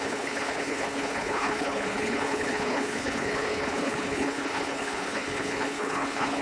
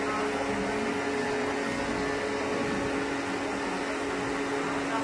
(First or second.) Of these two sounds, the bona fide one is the second